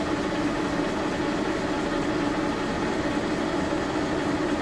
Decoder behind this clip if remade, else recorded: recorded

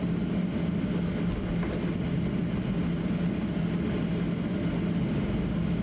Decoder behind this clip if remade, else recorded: recorded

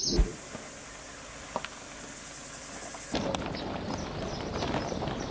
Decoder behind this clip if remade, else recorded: recorded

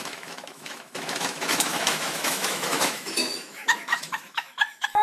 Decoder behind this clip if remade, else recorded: remade, autoencoder, DAC-VAE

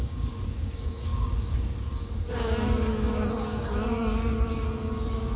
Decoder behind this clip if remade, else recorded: remade, codec, DAC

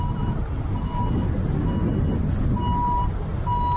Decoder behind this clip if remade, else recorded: recorded